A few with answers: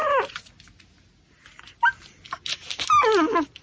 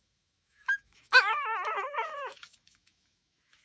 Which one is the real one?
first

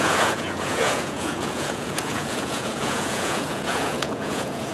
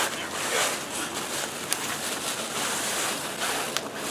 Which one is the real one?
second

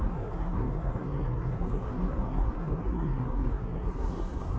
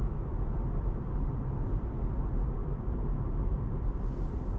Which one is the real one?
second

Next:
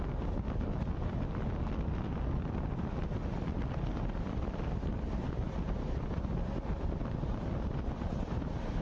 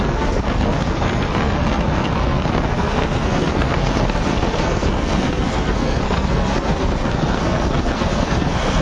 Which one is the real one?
first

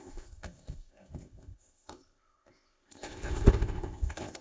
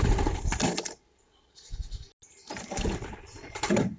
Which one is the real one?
second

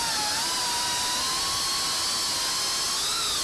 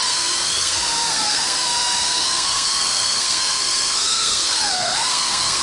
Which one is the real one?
first